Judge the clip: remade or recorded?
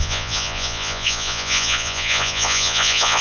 remade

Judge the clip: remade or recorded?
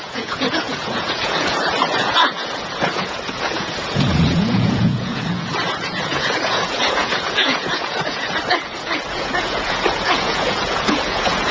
remade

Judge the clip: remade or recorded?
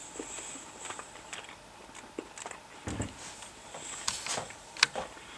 recorded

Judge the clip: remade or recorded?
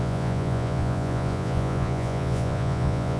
remade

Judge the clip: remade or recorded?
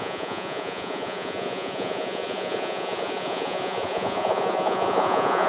remade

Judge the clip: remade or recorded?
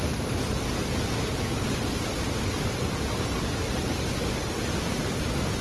recorded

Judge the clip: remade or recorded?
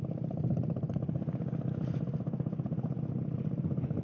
recorded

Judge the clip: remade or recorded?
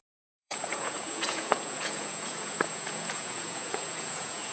remade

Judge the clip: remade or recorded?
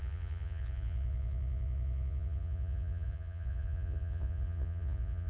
remade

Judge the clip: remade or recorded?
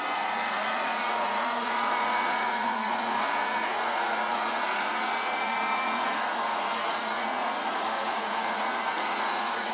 remade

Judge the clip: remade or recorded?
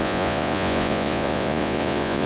remade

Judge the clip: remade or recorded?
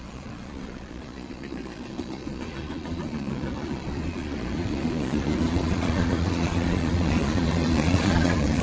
remade